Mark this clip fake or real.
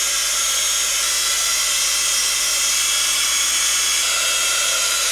real